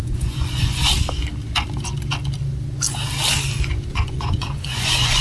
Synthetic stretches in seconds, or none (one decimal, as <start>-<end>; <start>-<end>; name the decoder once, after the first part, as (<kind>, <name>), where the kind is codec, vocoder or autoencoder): 0.0-0.8 (vocoder, Vocos); 3.9-5.2